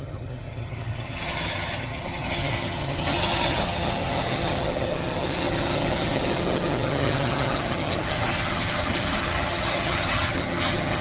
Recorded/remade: remade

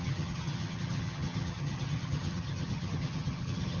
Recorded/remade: remade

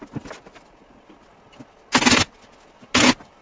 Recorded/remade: recorded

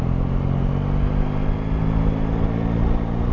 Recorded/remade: recorded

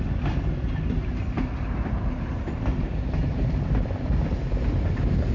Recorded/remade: recorded